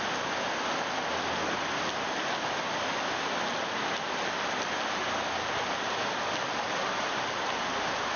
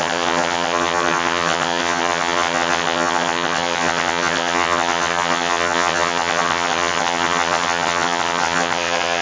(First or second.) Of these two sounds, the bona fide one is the first